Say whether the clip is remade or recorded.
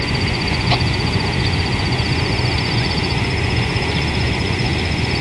remade